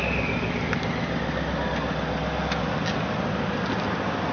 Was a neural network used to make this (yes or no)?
no